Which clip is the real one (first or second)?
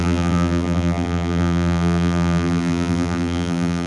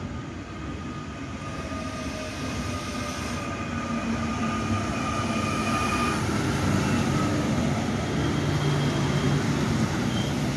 second